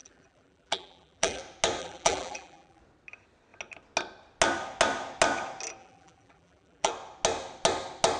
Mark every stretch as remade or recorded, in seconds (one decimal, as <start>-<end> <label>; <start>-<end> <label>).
0.0-1.4 remade; 1.4-1.8 recorded; 1.8-2.8 remade; 2.8-5.8 recorded; 5.8-6.9 remade; 6.9-8.2 recorded